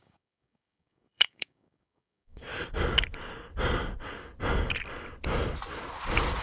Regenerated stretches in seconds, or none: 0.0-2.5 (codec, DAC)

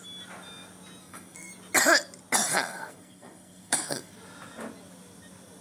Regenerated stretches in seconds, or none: 1.0-1.5 (codec, SNAC); 2.5-4.1

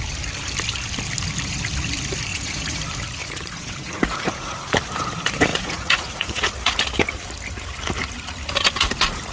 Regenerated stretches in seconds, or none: 2.3-2.8 (vocoder, Vocos); 3.2-4.7; 5.5-6.5

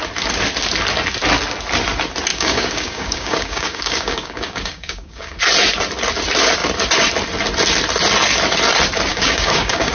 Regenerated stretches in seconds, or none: 2.3-5.4 (codec, DAC); 9.1-9.9

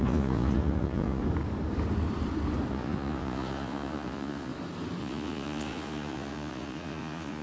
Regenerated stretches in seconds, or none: 0.0-1.2 (vocoder, Vocos); 2.7-4.5; 5.0-7.4

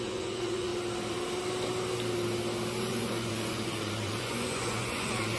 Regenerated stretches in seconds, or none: 0.0-0.7 (vocoder, Vocos); 2.8-5.4

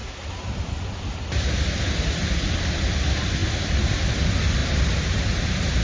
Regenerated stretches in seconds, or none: 0.0-0.6 (vocoder, BigVGAN v2); 4.6-5.2

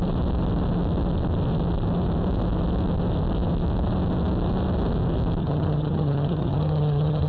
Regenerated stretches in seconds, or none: 5.4-7.3 (vocoder, HiFi-GAN)